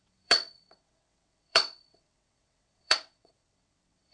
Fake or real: fake